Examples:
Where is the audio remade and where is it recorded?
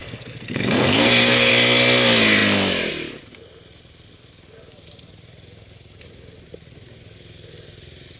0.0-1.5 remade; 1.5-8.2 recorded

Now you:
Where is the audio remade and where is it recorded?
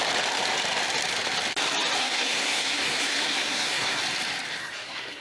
0.0-2.0 recorded; 2.0-4.0 remade; 4.0-4.6 recorded; 4.6-5.2 remade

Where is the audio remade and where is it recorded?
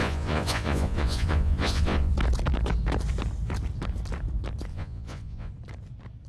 0.0-2.1 remade; 2.1-4.7 recorded; 4.7-5.5 remade; 5.5-6.3 recorded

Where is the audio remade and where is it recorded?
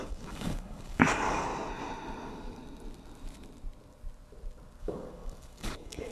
0.0-1.5 remade; 1.5-2.2 recorded; 2.2-2.6 remade; 2.6-4.8 recorded; 4.8-6.1 remade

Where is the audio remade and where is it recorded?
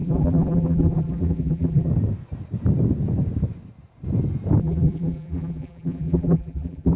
0.0-1.9 remade; 1.9-4.6 recorded; 4.6-7.0 remade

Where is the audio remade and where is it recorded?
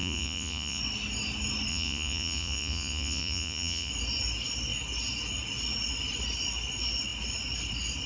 0.0-0.8 remade; 0.8-1.7 recorded; 1.7-3.9 remade; 3.9-8.1 recorded